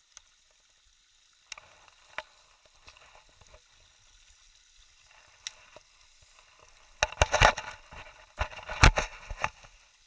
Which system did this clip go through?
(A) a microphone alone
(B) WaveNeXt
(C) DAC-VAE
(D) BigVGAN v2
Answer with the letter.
A